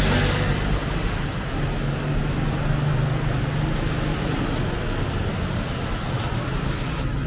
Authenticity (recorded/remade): recorded